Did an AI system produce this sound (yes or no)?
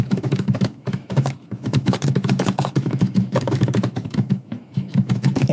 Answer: yes